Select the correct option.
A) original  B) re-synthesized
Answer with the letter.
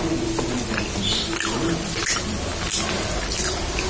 A